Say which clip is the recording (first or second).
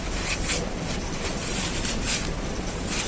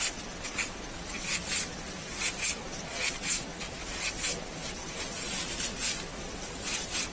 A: second